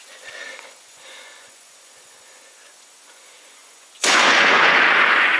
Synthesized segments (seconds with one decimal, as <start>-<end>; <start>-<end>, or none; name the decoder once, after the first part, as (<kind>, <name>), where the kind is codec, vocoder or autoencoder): 0.0-5.4 (vocoder, Vocos)